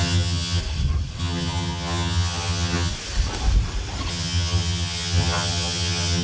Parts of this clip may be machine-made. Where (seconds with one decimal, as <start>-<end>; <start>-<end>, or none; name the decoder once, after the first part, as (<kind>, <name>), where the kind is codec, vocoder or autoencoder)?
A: 0.0-0.6 (vocoder, HiFi-GAN); 1.2-2.9; 4.1-6.2